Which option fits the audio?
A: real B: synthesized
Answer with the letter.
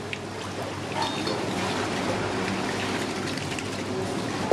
A